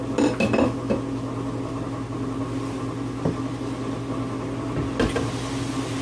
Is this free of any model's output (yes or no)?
yes